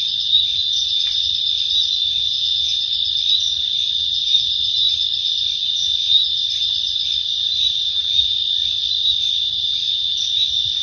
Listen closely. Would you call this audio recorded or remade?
recorded